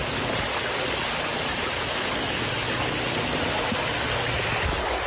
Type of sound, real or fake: real